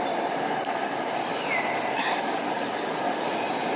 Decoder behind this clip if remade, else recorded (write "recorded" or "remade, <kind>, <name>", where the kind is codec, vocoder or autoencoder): recorded